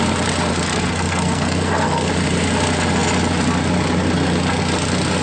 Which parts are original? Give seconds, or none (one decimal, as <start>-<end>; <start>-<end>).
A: 0.0-0.5; 2.1-5.2